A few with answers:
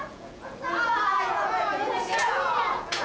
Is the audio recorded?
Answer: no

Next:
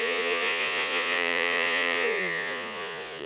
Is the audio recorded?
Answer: no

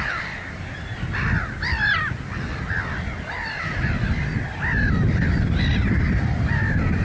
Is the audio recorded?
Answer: yes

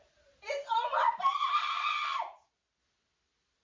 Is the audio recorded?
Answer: yes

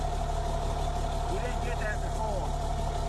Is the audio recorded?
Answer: yes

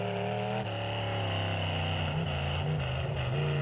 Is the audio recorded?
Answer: yes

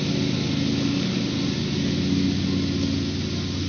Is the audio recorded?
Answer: yes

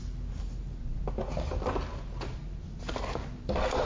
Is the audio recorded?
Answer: yes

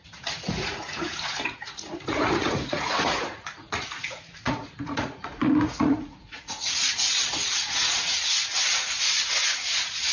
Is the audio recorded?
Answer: no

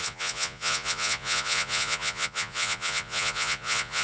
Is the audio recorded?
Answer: no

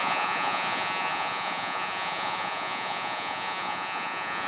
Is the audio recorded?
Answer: no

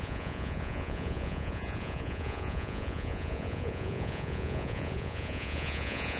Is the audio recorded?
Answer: no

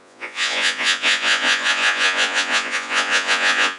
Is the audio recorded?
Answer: no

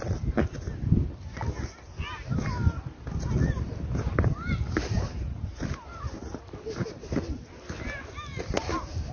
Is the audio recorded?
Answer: yes